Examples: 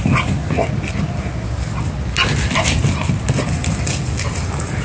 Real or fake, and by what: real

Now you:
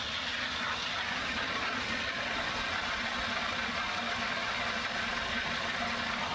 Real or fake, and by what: real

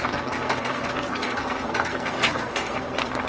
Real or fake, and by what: fake, codec, SNAC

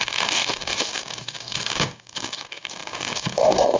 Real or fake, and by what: fake, codec, DAC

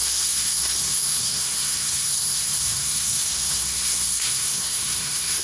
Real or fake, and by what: fake, codec, SNAC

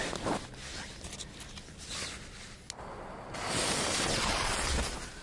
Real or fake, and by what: real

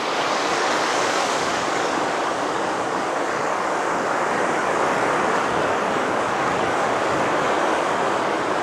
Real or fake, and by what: fake, codec, DAC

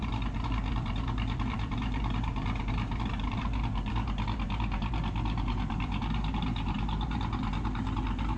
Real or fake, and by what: fake, vocoder, BigVGAN v2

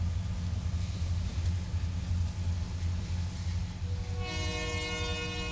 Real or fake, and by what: real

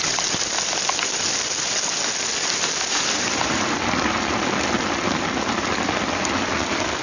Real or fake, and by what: real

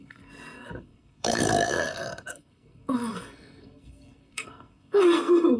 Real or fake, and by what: fake, codec, SNAC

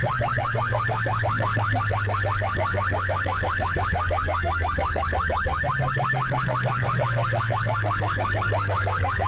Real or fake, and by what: fake, codec, SNAC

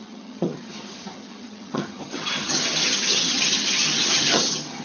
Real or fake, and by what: fake, vocoder, HiFi-GAN